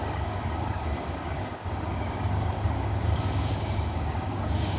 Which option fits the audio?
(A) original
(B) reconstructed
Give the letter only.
B